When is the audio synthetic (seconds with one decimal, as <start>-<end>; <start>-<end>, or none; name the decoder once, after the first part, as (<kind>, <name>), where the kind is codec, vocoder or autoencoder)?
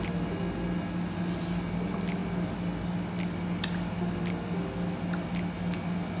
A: none